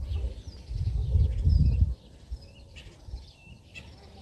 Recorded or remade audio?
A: recorded